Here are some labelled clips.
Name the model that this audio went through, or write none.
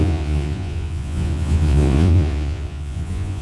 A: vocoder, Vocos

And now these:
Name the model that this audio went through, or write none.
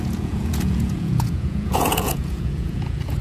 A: vocoder, Vocos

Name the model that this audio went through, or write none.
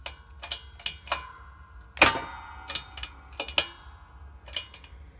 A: none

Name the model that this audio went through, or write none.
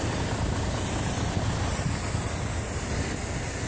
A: none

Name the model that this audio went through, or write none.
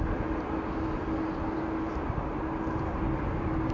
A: none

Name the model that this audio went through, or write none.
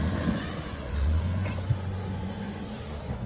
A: vocoder, Vocos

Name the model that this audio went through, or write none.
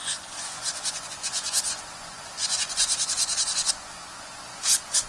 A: vocoder, Vocos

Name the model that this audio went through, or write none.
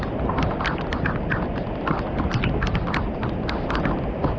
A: none